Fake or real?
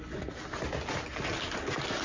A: real